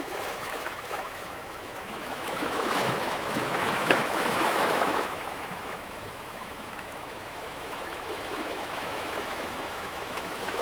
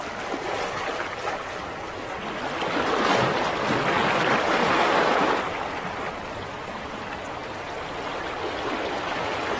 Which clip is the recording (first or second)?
second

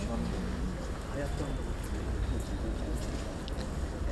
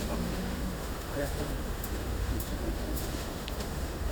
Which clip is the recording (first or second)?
first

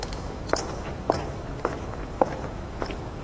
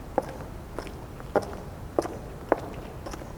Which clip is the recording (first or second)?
second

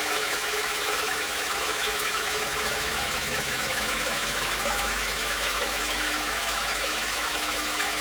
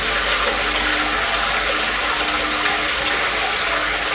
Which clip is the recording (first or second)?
second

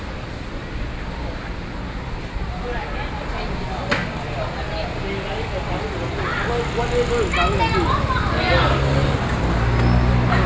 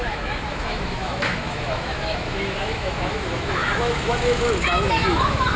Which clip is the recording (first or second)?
first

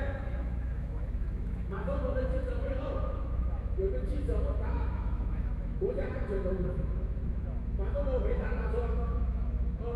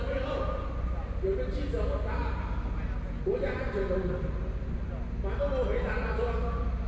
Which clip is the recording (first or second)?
second